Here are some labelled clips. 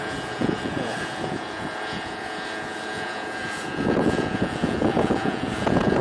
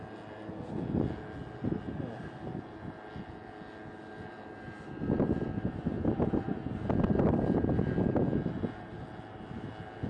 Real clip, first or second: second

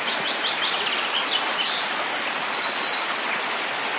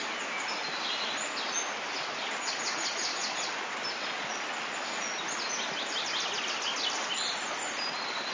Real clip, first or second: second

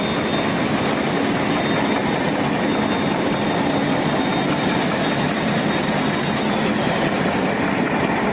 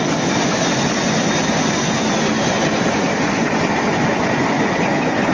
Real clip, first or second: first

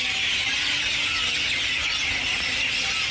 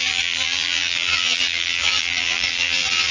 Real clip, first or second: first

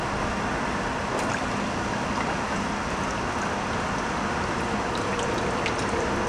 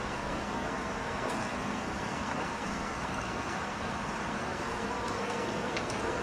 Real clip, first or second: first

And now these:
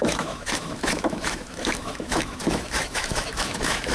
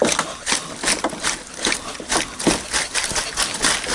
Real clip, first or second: second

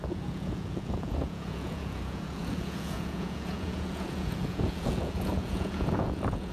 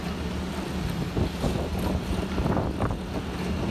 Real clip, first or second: second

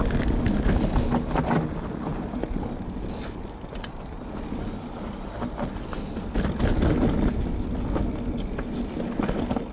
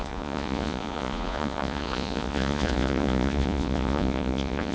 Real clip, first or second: first